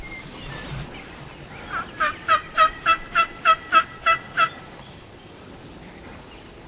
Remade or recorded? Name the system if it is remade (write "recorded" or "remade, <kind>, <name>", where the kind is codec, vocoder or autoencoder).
remade, vocoder, BigVGAN v2